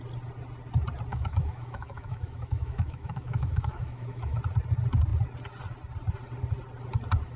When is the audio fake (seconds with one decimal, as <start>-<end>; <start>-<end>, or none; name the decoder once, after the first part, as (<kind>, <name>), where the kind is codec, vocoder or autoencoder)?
1.1-4.4 (autoencoder, DAC-VAE)